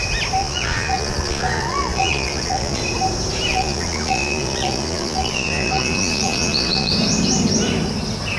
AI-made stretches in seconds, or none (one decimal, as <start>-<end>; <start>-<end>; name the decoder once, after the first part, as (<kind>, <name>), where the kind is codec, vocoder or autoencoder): 0.4-2.8 (vocoder, Vocos); 3.5-6.9